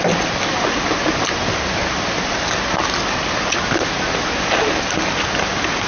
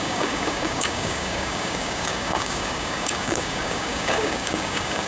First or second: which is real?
first